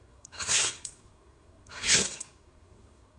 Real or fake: fake